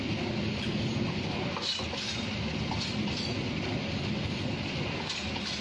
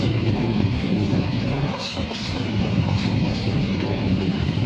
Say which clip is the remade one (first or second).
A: second